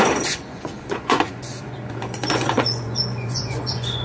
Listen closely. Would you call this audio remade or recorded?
remade